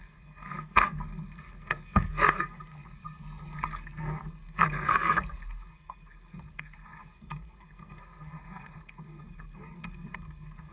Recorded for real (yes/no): no